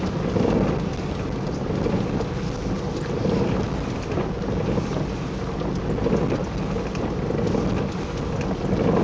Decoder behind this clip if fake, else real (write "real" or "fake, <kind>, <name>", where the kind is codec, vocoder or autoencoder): real